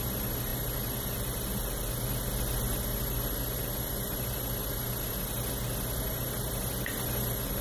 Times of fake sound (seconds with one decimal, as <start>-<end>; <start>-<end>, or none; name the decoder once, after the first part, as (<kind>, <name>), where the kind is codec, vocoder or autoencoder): none